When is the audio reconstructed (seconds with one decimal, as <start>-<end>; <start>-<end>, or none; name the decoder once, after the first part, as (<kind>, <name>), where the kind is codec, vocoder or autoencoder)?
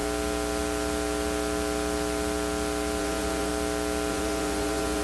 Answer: 3.0-3.5 (vocoder, Vocos); 4.1-5.0